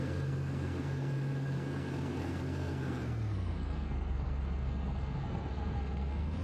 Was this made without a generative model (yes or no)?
no